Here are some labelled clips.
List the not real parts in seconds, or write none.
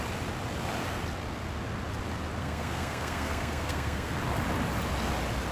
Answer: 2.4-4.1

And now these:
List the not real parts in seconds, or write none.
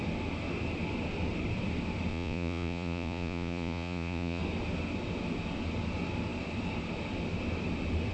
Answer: 2.1-4.4